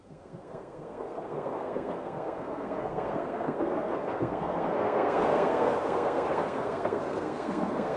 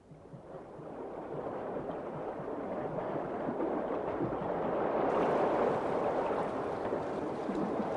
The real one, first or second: second